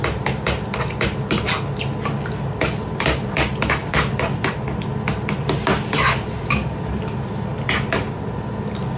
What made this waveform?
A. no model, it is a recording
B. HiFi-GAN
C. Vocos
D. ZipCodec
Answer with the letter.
A